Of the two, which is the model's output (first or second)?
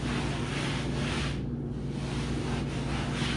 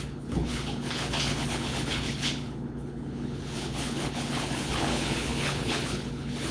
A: second